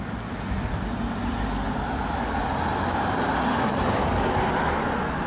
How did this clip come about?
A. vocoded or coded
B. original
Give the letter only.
B